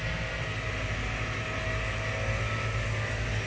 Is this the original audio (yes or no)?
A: yes